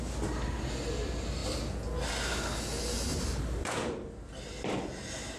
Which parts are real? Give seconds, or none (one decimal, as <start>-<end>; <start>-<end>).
0.0-3.1; 4.1-5.4